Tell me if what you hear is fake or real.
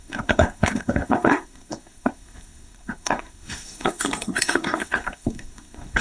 fake